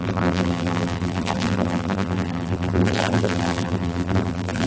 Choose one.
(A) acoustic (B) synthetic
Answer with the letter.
B